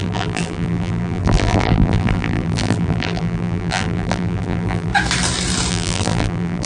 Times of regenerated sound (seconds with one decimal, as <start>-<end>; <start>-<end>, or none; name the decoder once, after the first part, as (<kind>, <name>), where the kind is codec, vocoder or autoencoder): 0.0-4.9 (vocoder, BigVGAN v2); 5.7-6.7